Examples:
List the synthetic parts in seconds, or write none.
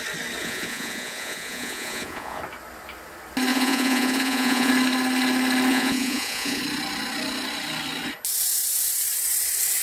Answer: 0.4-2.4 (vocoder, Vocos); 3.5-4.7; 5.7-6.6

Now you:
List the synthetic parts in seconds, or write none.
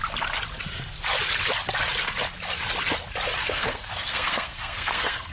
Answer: 3.4-5.3 (codec, SNAC)